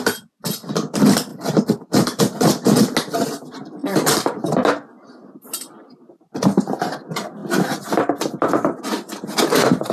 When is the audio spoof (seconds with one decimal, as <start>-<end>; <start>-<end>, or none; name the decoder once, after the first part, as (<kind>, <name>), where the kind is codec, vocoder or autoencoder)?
1.3-2.2 (vocoder, BigVGAN v2); 3.8-4.5